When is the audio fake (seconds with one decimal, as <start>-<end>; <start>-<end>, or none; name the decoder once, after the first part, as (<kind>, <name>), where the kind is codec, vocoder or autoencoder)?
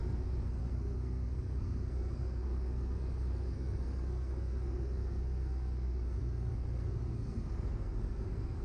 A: 0.0-8.6 (codec, SNAC)